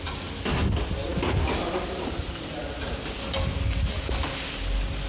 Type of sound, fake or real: real